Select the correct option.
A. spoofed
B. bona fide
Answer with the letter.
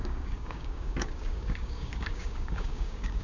A